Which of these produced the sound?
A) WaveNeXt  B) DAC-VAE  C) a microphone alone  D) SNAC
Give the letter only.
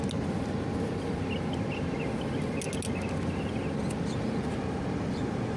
C